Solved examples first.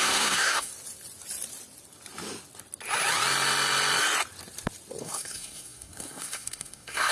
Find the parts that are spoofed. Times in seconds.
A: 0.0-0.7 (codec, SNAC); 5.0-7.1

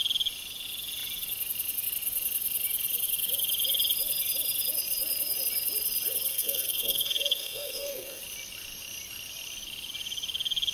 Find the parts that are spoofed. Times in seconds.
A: 6.3-8.2 (codec, SNAC)